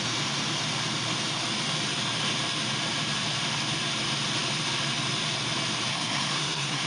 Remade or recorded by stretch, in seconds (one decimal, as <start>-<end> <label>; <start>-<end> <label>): 0.0-5.9 recorded; 5.9-6.9 remade